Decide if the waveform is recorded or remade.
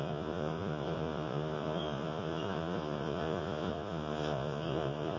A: remade